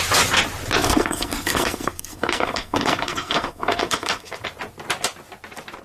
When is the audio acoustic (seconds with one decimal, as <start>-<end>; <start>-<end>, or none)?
0.0-0.8; 4.3-5.8